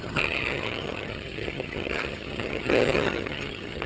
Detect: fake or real fake